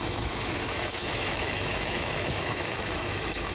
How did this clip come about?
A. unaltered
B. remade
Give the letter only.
B